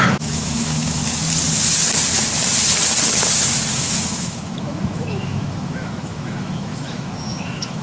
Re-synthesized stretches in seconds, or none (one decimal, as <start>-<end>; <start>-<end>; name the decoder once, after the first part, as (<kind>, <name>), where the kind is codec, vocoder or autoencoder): 0.0-1.0 (autoencoder, DAC-VAE); 3.7-7.8